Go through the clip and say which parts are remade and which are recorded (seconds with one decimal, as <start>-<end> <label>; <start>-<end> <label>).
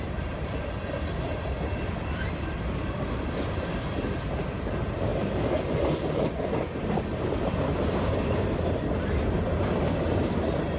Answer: 0.0-10.8 recorded